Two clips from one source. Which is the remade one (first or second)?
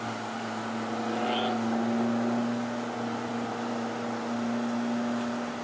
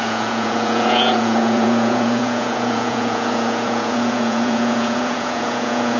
second